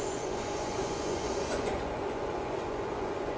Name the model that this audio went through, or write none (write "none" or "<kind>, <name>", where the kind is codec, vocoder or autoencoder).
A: vocoder, Vocos